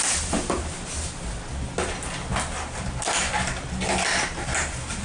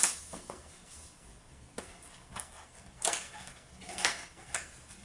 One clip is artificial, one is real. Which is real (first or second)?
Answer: first